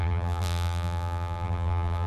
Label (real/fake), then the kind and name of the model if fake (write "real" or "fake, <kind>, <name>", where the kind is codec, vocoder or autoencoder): fake, vocoder, BigVGAN v2